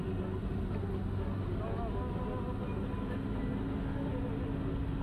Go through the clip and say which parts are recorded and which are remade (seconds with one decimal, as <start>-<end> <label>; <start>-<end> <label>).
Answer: 0.0-5.0 recorded